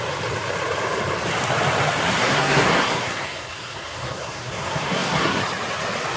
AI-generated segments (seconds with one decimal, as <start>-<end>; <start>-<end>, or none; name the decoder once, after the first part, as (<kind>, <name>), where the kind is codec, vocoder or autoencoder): 2.2-5.4 (codec, SNAC)